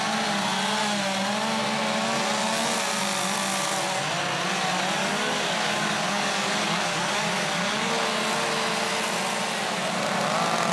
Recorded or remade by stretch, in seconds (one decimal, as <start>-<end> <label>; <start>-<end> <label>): 0.0-5.0 recorded; 5.0-7.9 remade; 7.9-10.7 recorded